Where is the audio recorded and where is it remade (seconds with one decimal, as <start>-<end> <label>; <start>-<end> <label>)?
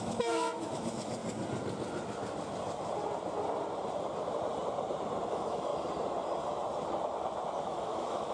0.0-1.2 remade; 1.2-5.3 recorded; 5.3-5.7 remade; 5.7-7.6 recorded; 7.6-8.3 remade